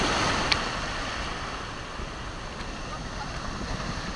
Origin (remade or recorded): recorded